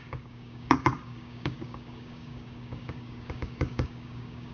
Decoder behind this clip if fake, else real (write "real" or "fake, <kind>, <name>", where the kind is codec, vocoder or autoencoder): fake, codec, DAC